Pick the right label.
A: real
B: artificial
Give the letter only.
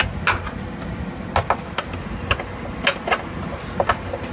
A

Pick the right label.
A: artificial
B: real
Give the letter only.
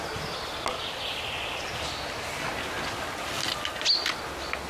B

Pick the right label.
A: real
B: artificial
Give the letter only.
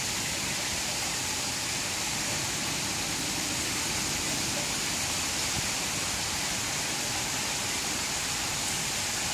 A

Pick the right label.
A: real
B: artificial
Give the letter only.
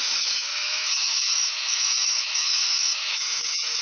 B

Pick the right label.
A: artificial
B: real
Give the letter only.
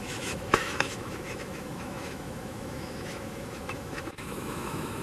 A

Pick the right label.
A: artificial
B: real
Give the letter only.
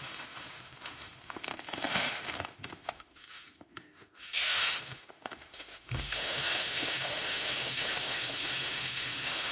A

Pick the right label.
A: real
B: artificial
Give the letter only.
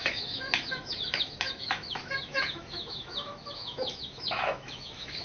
B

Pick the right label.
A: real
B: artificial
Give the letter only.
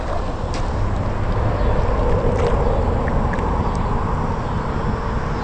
A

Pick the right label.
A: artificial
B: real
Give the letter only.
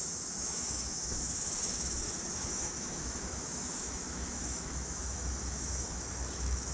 A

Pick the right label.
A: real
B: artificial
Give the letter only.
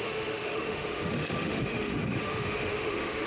B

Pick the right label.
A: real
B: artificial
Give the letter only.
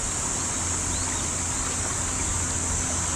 A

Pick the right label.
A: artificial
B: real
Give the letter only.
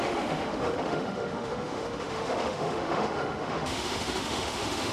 A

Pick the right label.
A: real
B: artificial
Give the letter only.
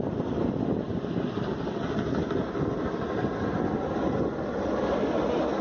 A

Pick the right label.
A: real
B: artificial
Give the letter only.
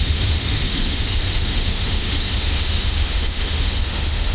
B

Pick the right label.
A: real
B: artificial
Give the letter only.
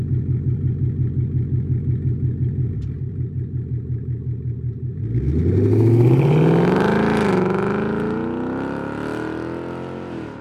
A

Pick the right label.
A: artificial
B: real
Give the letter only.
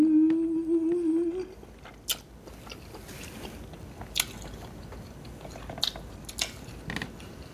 B